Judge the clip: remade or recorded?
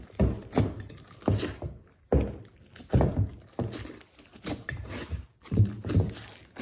recorded